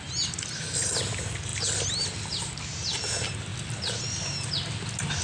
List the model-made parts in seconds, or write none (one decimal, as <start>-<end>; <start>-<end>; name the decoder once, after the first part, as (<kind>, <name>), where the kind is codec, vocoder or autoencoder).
none